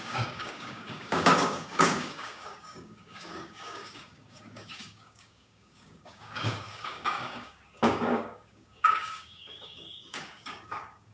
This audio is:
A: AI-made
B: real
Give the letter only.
A